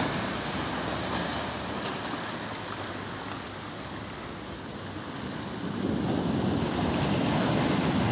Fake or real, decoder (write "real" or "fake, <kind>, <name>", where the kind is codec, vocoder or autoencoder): real